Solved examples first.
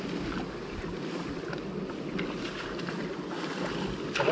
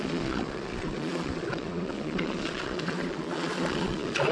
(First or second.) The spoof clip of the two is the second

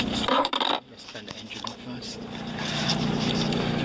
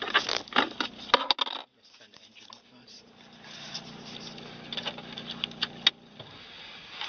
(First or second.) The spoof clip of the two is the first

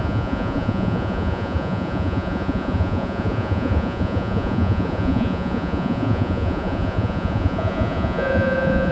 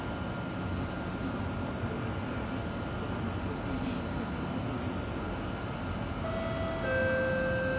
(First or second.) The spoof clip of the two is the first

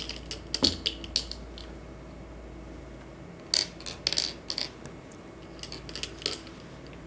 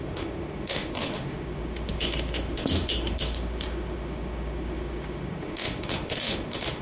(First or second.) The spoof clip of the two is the second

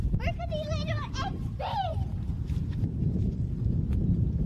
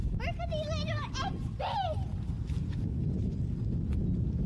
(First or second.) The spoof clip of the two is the first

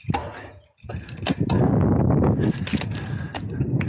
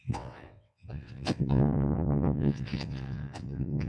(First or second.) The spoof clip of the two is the second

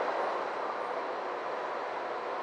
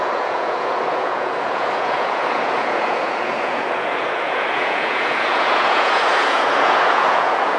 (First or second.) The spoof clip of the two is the second